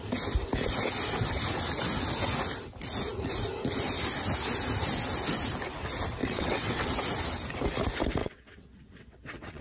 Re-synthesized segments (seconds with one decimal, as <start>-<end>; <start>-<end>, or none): 6.2-6.9; 8.2-9.6